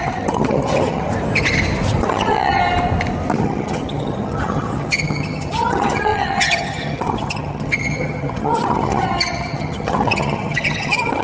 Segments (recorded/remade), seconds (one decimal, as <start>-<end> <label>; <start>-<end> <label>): 0.0-1.1 remade; 1.1-2.1 recorded; 2.1-2.6 remade; 2.6-3.4 recorded; 3.4-11.2 remade